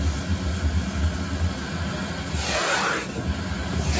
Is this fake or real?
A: real